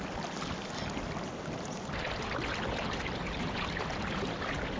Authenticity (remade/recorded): recorded